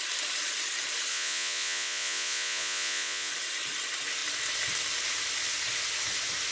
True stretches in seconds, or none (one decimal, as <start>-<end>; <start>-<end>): 0.0-1.1; 3.3-6.5